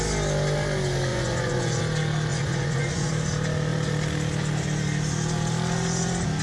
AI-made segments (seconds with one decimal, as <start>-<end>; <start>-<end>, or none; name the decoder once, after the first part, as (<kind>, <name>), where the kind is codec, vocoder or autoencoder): 1.1-1.8 (vocoder, Vocos); 2.3-3.1